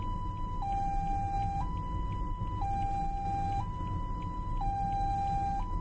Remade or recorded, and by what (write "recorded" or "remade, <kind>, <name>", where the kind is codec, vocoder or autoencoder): recorded